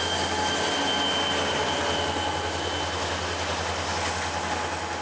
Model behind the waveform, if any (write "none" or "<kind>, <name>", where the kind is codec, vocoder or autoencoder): none